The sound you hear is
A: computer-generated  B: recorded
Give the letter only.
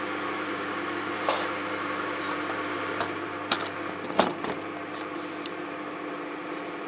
A